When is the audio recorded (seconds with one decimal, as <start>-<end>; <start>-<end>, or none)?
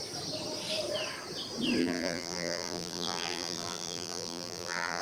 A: 0.0-1.8